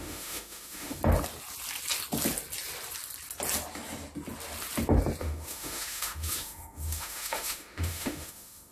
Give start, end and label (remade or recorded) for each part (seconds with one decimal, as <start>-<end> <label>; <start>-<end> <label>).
0.0-1.0 remade; 1.0-5.2 recorded; 5.2-8.7 remade